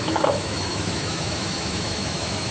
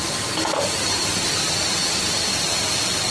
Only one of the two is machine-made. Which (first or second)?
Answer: first